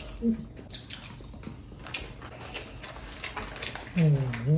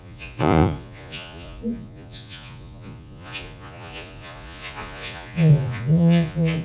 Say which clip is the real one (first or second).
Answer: first